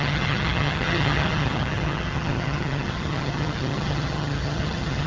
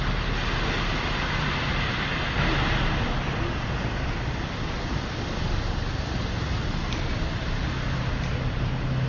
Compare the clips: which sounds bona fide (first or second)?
second